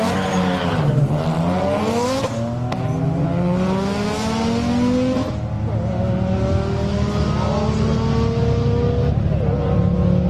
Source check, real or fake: real